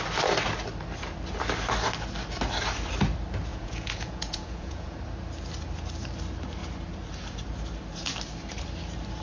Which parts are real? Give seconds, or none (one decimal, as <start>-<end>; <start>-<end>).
0.0-3.5; 5.0-9.2